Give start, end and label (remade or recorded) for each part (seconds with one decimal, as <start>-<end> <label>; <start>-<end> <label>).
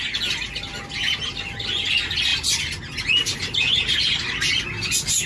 0.0-5.3 recorded